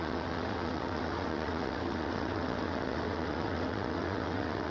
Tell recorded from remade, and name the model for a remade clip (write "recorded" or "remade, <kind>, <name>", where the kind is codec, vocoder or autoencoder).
remade, vocoder, WaveNeXt